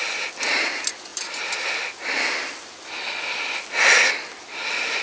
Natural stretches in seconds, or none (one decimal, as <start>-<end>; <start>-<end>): 0.0-5.0